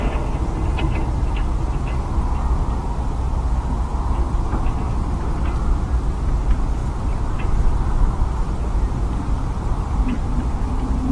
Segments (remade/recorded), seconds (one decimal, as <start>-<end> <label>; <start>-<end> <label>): 0.0-6.8 recorded; 6.8-11.1 remade